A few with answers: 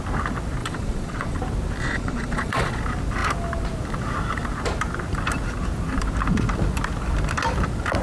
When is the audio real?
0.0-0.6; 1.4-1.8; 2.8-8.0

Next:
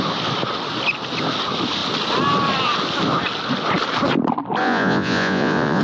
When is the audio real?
0.0-4.6

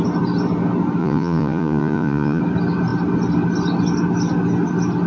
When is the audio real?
0.0-1.0; 2.4-5.1

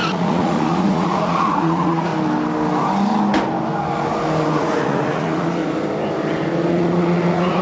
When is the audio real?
2.1-4.5; 5.6-6.7

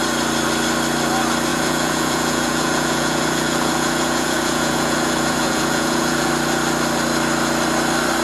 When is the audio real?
0.0-1.5; 6.3-8.2

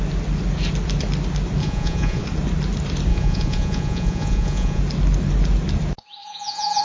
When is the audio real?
0.0-1.6; 2.2-3.1; 4.8-6.2

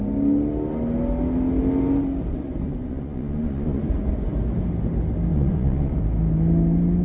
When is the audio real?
0.0-2.3; 4.3-5.3; 6.0-7.0